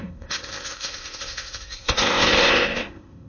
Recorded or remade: remade